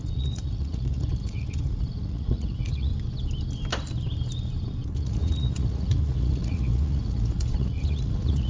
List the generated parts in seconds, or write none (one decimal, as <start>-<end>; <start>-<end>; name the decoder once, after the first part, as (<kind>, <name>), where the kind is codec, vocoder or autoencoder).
0.0-2.9 (vocoder, Vocos); 4.9-8.5